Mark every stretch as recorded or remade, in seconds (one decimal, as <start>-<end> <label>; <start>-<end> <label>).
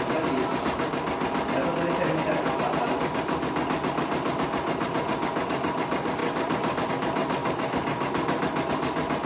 0.0-6.2 recorded; 6.2-6.9 remade; 6.9-7.4 recorded; 7.4-8.7 remade; 8.7-9.3 recorded